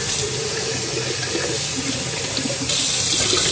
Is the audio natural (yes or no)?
yes